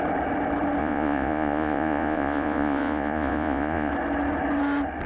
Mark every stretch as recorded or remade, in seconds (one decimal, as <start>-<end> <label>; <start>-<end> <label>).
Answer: 0.0-0.8 recorded; 0.8-3.9 remade; 3.9-5.1 recorded